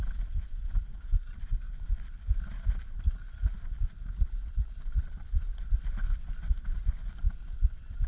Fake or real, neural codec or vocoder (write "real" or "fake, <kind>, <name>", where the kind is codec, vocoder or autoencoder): real